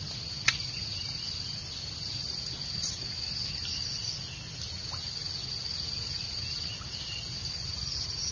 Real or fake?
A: real